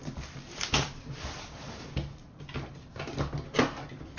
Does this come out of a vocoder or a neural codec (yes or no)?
no